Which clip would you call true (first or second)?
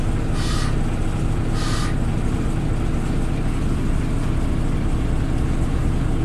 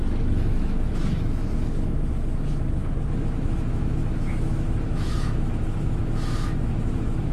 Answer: first